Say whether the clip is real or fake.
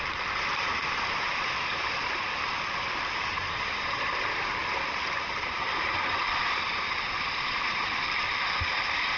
fake